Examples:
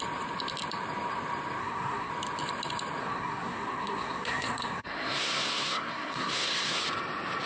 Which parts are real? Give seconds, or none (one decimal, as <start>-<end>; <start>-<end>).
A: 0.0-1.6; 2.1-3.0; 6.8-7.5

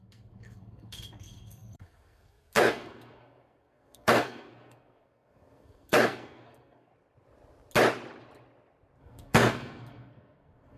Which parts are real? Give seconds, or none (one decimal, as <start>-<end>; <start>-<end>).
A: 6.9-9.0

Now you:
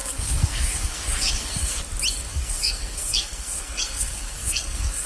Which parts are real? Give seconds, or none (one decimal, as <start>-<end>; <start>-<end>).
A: 1.8-2.3